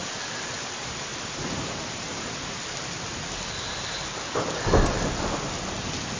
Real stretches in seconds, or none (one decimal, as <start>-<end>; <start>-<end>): 0.0-1.1; 2.5-6.2